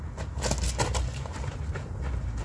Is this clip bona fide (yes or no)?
yes